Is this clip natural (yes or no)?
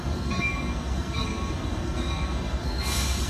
no